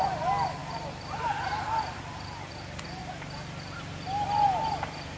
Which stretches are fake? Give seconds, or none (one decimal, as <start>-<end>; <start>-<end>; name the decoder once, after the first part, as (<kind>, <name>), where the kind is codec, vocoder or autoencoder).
none